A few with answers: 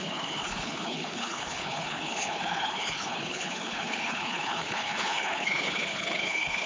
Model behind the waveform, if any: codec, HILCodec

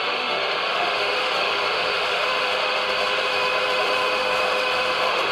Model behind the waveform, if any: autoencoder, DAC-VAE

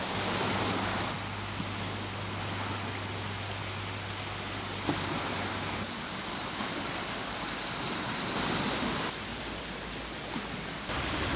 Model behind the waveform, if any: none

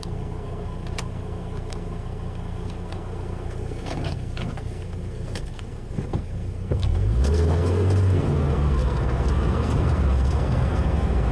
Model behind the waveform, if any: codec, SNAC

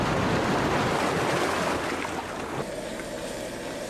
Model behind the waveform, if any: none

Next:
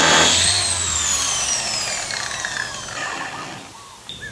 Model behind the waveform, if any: none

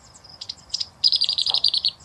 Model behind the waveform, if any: vocoder, Vocos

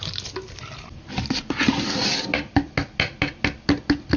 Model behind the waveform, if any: none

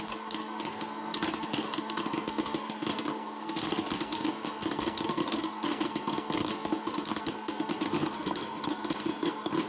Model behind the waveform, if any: codec, SNAC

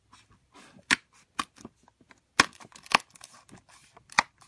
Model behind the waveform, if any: none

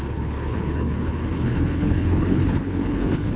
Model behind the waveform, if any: codec, HILCodec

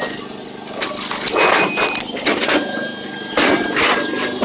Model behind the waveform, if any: none